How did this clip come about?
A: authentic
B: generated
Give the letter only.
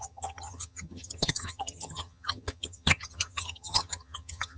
B